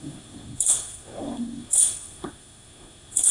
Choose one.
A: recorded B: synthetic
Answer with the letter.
B